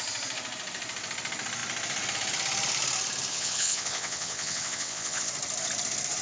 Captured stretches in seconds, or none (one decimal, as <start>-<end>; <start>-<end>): 0.0-3.3; 5.3-6.2